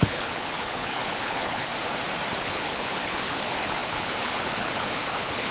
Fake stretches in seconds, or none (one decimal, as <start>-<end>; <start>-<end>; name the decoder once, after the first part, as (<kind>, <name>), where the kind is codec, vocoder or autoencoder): 0.0-1.7 (codec, HILCodec); 2.4-5.5